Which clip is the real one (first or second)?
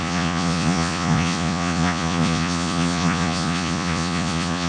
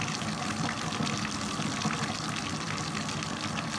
second